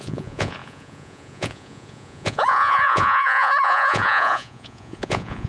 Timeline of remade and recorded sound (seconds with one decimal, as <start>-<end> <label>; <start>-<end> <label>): 0.0-5.5 remade